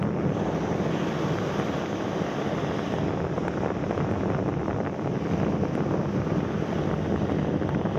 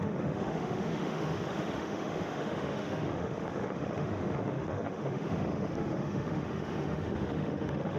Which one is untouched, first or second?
first